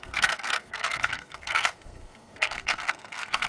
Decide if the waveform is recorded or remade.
remade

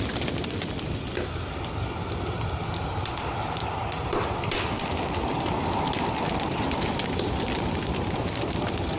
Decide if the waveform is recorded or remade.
recorded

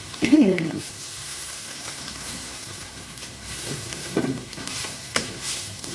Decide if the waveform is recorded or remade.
remade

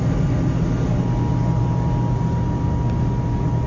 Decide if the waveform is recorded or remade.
recorded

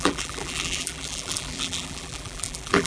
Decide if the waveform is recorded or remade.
remade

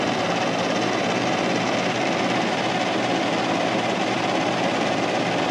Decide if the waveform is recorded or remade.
remade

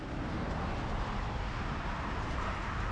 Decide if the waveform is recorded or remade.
recorded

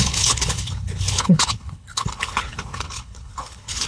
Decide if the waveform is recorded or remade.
remade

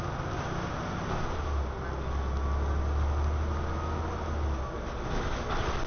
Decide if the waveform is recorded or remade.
recorded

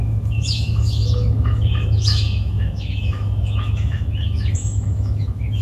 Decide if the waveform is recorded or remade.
remade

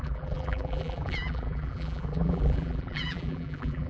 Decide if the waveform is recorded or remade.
remade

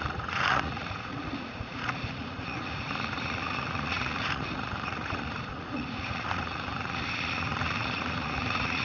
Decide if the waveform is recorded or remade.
remade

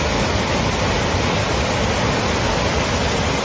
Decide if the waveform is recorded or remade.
recorded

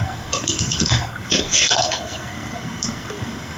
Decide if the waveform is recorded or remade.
remade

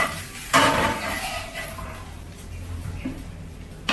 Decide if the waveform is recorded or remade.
remade